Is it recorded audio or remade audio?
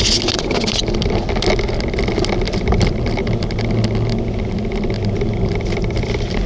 recorded